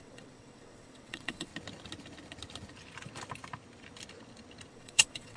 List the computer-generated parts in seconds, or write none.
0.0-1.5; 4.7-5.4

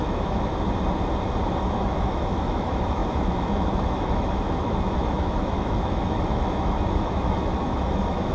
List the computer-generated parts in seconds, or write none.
0.0-0.5; 1.6-8.3

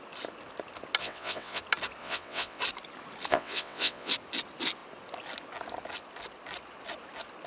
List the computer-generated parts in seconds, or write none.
1.0-1.6; 2.0-2.6; 3.3-4.1

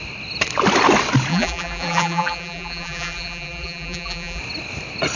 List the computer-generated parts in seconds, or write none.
1.3-4.4

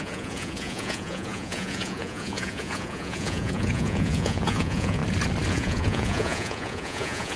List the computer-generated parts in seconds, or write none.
0.0-5.0; 5.5-7.4

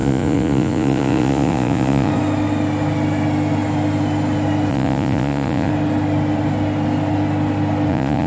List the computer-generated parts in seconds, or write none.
0.0-2.1; 4.7-5.7; 7.9-8.3

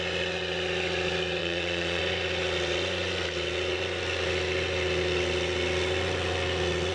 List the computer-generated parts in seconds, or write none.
1.4-2.0